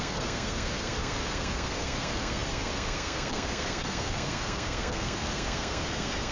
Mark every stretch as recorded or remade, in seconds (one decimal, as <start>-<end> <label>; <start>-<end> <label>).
0.0-6.3 remade